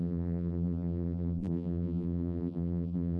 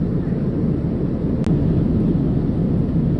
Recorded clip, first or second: second